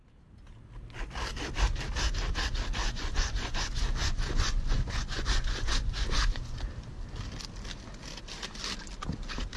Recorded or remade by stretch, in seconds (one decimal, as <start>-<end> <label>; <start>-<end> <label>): 0.0-2.8 recorded; 2.8-6.6 remade; 6.6-9.6 recorded